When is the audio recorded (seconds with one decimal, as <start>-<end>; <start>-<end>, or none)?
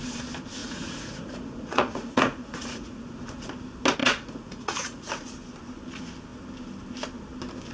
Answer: 0.0-0.6; 3.2-4.0; 5.1-7.7